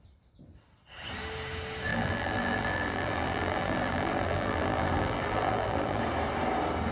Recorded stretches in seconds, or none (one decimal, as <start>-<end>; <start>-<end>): 0.0-1.9; 6.0-6.9